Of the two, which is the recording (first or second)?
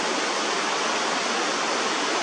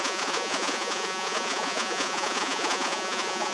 first